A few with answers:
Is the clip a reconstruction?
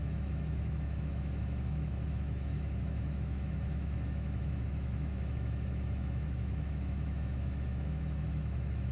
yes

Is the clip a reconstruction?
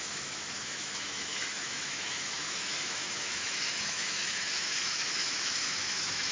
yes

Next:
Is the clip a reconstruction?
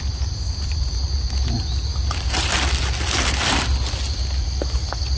no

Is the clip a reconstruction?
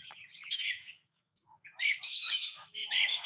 yes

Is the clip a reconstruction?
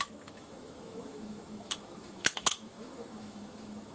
yes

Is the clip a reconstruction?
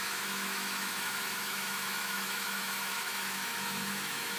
yes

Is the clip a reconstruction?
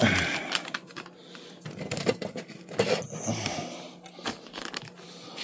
no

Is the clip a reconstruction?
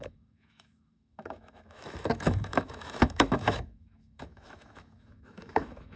yes